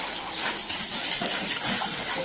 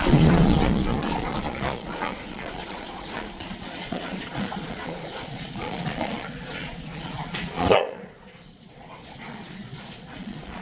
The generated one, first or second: second